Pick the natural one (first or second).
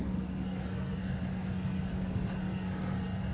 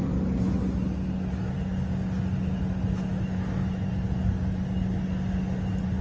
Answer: second